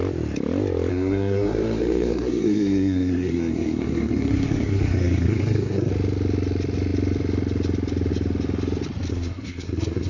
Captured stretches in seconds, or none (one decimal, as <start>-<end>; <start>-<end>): 0.0-0.9; 5.9-9.1